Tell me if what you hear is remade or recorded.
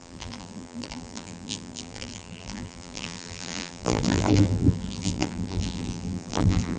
remade